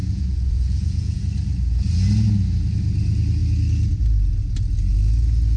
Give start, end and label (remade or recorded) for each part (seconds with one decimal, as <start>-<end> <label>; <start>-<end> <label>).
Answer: 0.0-1.2 remade; 1.2-5.6 recorded